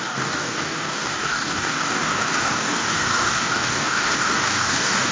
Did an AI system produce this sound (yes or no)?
yes